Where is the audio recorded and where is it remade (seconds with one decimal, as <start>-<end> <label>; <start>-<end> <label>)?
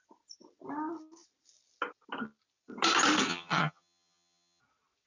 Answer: 0.0-3.3 recorded; 3.3-4.6 remade; 4.6-5.1 recorded